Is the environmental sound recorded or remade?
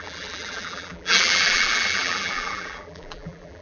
remade